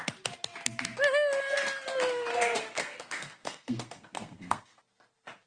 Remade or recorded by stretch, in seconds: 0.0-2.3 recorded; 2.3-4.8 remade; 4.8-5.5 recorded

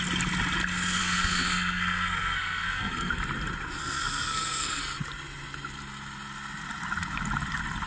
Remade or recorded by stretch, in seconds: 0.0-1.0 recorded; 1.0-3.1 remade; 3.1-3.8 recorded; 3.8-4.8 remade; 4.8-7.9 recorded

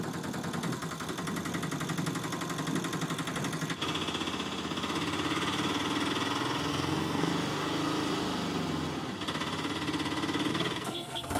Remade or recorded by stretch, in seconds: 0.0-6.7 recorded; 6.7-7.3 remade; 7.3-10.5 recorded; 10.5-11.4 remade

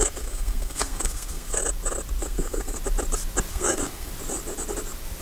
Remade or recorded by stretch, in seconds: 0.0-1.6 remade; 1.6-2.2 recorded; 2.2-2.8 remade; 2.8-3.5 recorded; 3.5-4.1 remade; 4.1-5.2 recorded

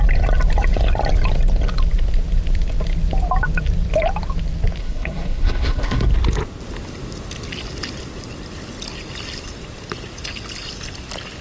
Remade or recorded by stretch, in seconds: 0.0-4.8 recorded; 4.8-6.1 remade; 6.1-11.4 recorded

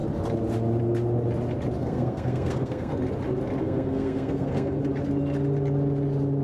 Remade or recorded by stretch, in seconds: 0.0-1.8 recorded; 1.8-2.9 remade; 2.9-3.6 recorded; 3.6-4.8 remade; 4.8-6.4 recorded

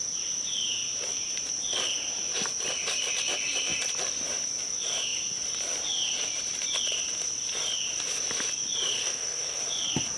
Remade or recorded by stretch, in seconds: 0.0-9.0 recorded; 9.0-9.6 remade; 9.6-10.2 recorded

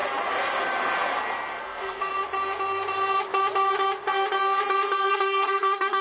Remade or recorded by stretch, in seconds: 0.0-1.6 recorded; 1.6-2.1 remade; 2.1-5.1 recorded; 5.1-6.0 remade